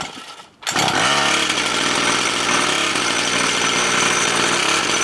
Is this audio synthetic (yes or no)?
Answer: no